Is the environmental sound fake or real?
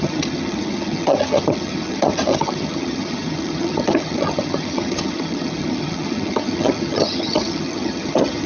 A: fake